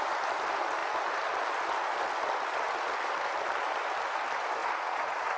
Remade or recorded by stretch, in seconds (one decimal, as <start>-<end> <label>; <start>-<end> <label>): 0.0-4.6 recorded; 4.6-5.4 remade